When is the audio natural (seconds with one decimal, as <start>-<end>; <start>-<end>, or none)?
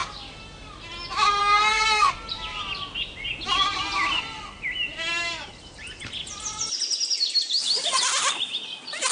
0.0-1.4; 2.1-9.1